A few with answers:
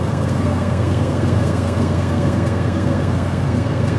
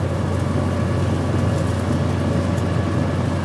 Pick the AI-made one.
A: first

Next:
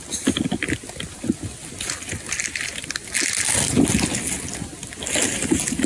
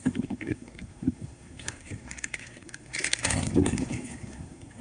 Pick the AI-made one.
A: second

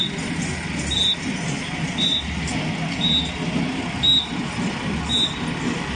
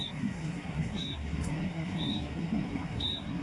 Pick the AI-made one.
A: second